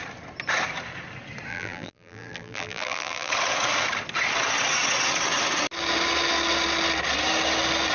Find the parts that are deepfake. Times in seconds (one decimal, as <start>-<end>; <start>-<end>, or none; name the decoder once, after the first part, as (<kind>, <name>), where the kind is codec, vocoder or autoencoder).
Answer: 1.5-3.3 (vocoder, BigVGAN v2)